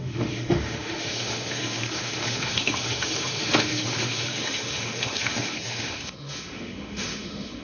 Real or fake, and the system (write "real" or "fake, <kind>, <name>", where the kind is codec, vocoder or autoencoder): fake, autoencoder, DAC-VAE